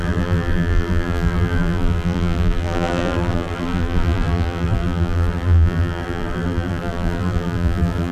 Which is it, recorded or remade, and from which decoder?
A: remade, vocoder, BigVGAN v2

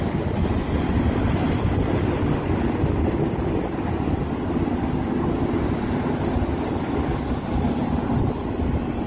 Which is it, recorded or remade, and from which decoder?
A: recorded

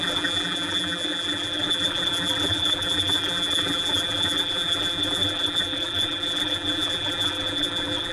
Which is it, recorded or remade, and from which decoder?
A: remade, vocoder, BigVGAN v2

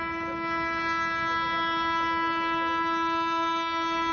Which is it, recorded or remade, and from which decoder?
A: recorded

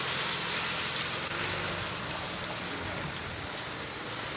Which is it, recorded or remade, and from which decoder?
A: recorded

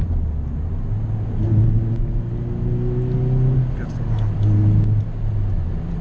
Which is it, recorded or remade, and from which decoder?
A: recorded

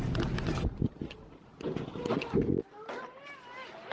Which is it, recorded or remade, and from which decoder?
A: recorded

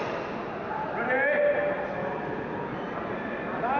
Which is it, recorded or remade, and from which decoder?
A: recorded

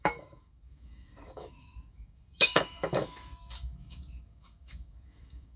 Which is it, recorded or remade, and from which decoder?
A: remade, autoencoder, DAC-VAE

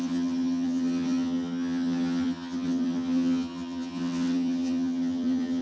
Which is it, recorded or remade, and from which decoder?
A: remade, vocoder, HiFi-GAN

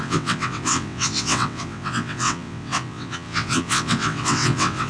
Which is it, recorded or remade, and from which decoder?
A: remade, vocoder, WaveNeXt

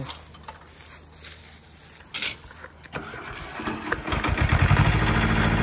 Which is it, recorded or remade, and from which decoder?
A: recorded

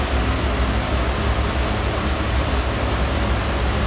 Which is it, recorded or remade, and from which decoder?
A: recorded